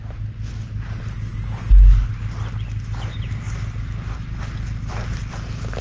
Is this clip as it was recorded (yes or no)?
yes